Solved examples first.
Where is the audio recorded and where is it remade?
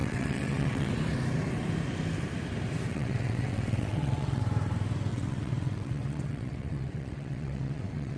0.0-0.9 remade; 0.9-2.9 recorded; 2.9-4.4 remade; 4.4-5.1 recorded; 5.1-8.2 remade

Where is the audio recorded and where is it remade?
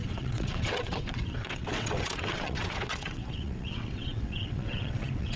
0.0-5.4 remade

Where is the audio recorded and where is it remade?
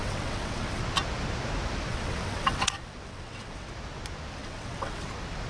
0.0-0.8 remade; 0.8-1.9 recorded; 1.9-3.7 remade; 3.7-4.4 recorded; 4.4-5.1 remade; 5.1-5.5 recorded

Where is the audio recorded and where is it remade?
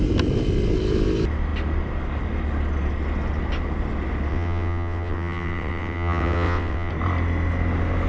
0.0-4.3 recorded; 4.3-6.9 remade; 6.9-8.1 recorded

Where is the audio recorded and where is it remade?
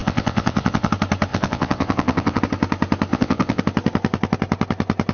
0.0-0.9 remade; 0.9-1.3 recorded; 1.3-2.4 remade; 2.4-3.1 recorded; 3.1-3.6 remade; 3.6-5.1 recorded